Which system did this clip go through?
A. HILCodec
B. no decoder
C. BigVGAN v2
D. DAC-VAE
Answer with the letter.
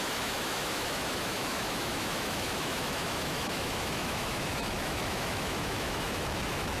D